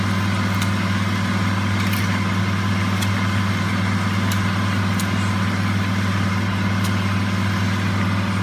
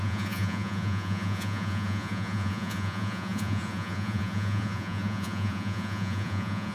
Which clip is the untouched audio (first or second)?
first